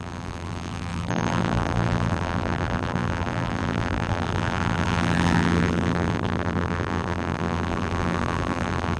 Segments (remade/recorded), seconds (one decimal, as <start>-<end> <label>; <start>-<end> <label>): 0.0-9.0 remade